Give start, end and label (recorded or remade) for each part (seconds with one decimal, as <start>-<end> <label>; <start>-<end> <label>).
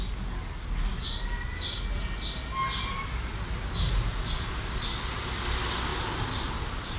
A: 0.0-7.0 recorded